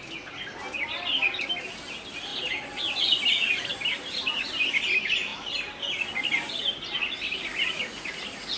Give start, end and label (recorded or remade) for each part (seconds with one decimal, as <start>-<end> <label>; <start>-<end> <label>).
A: 0.0-8.6 recorded